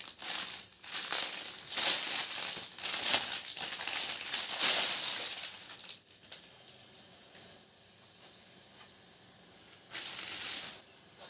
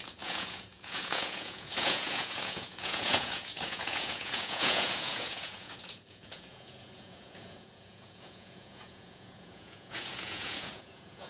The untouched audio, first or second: first